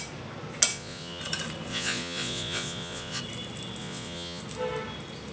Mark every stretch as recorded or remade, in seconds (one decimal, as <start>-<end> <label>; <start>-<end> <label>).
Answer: 0.0-0.7 recorded; 0.7-1.2 remade; 1.2-1.7 recorded; 1.7-3.2 remade; 3.2-3.8 recorded; 3.8-4.4 remade; 4.4-5.3 recorded